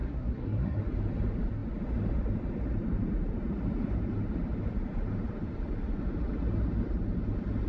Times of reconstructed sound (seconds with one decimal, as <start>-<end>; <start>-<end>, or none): 0.0-0.8